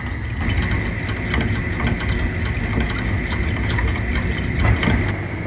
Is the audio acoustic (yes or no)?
yes